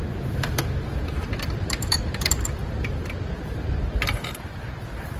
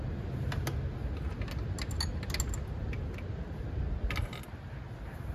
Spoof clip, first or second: first